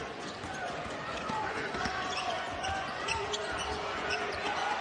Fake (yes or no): yes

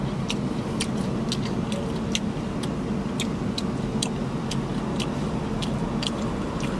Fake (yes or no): no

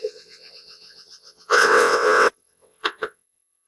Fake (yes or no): yes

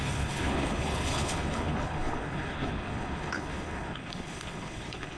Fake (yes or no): yes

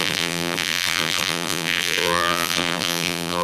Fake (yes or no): yes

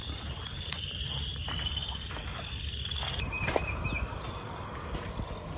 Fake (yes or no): yes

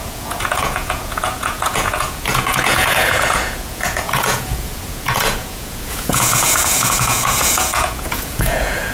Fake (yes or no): yes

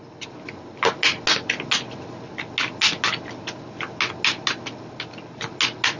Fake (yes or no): no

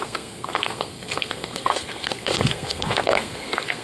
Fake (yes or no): yes